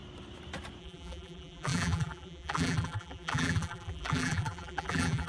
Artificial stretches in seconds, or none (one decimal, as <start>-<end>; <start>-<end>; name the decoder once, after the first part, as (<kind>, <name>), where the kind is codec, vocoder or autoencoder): 0.8-5.3 (vocoder, BigVGAN v2)